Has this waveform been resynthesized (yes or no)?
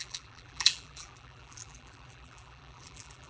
yes